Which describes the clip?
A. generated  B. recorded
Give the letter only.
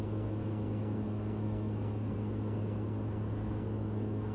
A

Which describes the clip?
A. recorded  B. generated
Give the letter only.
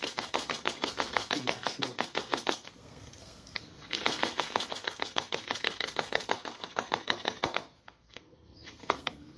B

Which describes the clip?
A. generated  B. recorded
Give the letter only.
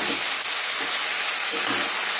B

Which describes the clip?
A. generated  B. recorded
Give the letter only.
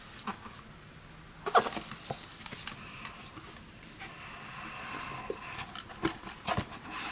B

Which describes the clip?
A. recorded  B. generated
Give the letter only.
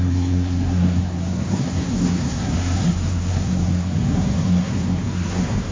B